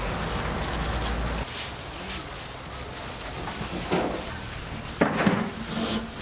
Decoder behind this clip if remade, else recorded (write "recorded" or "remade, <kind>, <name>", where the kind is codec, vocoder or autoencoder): recorded